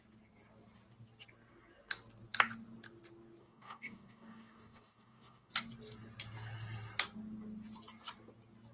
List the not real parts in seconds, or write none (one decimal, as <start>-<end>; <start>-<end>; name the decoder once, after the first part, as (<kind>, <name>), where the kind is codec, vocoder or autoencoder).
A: 3.4-5.5 (codec, DAC)

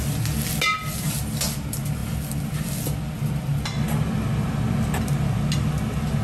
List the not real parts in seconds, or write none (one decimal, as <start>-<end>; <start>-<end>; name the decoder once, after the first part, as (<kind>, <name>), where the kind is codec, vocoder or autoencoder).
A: none

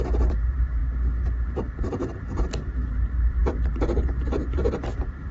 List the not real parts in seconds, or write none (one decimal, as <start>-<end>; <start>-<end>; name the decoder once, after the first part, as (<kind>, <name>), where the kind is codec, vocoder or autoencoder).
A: 0.0-0.8 (vocoder, BigVGAN v2); 1.4-5.3

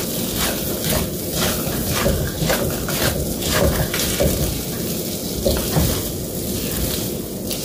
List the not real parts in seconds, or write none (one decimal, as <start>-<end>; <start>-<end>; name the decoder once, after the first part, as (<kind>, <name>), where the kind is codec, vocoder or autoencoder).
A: none

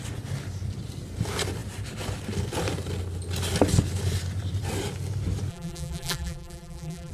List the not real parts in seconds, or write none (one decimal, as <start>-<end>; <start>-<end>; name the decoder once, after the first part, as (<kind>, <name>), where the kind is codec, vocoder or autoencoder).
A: 5.5-7.1 (vocoder, BigVGAN v2)

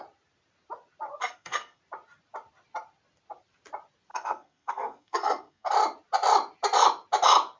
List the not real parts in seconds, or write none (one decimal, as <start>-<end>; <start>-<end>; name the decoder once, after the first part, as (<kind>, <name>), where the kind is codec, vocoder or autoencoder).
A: 1.2-1.8 (codec, SNAC); 4.1-5.7

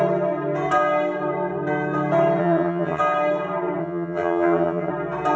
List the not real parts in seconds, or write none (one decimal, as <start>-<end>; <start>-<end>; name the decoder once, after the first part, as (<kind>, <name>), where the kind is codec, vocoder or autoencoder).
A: 2.4-3.0 (vocoder, HiFi-GAN); 3.8-4.9

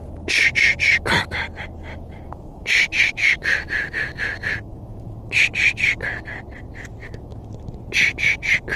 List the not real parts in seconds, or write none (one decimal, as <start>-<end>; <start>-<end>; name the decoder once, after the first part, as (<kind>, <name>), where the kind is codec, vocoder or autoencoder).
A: 1.9-5.4 (autoencoder, DAC-VAE); 7.0-7.5